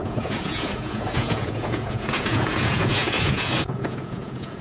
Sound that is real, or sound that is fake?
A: fake